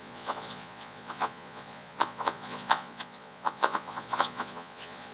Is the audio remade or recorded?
remade